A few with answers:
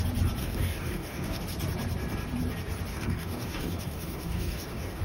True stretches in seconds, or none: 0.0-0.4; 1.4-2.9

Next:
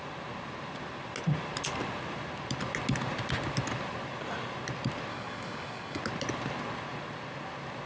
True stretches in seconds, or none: 0.0-5.1; 6.0-7.9

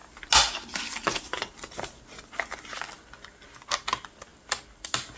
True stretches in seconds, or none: 0.0-5.2

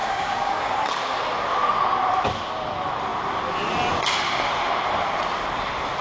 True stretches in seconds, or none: 0.7-6.0

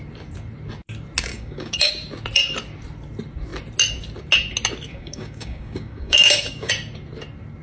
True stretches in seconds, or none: 0.0-1.3; 1.9-4.9; 6.7-7.6

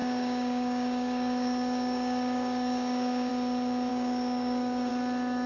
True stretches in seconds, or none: 3.3-3.9; 4.9-5.5

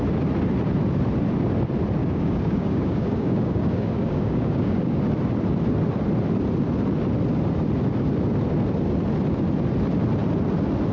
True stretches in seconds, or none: 0.0-2.0; 5.0-10.9

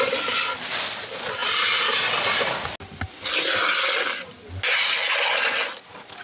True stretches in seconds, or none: 0.0-6.2